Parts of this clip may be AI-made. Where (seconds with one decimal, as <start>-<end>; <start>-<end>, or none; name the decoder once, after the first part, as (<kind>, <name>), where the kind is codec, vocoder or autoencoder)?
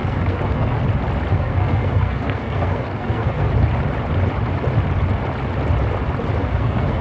0.0-0.8 (codec, SNAC); 1.3-3.5; 6.4-7.0